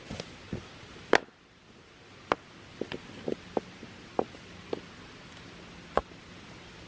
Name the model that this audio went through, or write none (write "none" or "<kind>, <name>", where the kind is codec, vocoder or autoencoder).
none